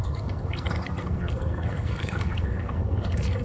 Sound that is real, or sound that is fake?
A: fake